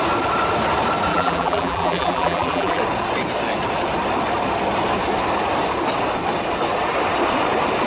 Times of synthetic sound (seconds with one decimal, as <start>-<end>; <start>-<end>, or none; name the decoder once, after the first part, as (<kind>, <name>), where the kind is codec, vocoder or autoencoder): 1.1-2.8 (vocoder, BigVGAN v2)